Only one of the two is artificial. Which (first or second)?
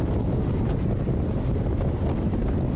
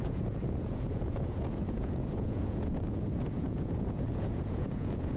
second